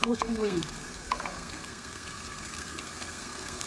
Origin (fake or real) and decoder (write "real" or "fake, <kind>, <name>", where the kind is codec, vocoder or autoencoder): fake, codec, SNAC